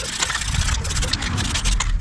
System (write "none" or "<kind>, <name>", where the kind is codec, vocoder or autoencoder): none